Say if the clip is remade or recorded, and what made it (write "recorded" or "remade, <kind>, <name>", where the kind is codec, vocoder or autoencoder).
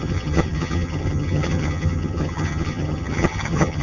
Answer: remade, vocoder, HiFi-GAN